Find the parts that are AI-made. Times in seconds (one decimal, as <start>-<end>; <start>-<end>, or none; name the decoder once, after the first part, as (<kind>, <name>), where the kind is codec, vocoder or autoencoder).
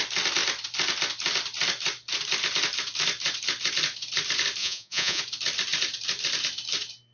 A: 4.6-5.2 (vocoder, Vocos)